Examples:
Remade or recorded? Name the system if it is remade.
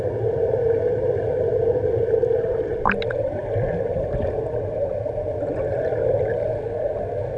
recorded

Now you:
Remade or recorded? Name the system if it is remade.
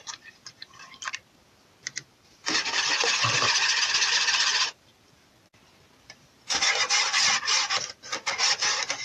remade, vocoder, BigVGAN v2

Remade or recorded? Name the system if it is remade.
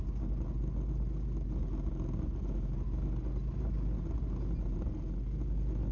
recorded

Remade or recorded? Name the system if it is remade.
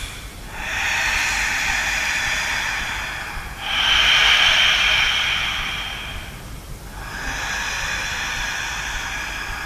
recorded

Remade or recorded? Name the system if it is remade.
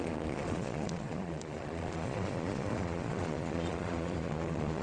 remade, vocoder, Vocos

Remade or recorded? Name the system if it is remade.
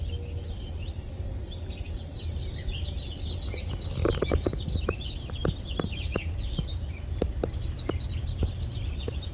recorded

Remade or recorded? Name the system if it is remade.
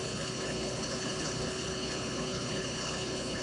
remade, codec, HILCodec